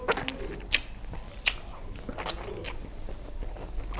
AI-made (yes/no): no